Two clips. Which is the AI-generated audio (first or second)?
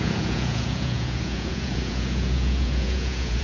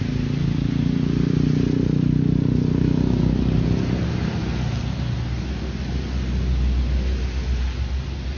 first